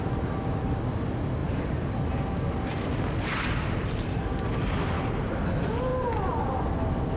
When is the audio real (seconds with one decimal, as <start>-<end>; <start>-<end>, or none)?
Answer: 0.0-1.4; 5.4-7.2